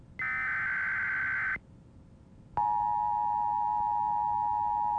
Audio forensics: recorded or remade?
recorded